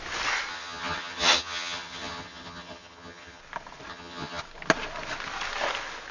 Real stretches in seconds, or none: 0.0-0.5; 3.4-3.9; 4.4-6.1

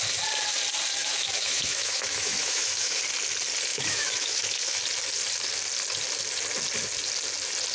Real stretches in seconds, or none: 0.0-1.0; 3.0-3.7; 4.8-7.7

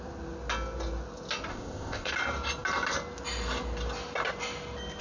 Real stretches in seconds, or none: 0.0-1.5; 2.1-5.0